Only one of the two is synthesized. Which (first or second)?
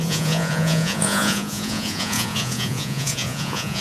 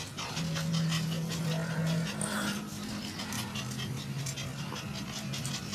first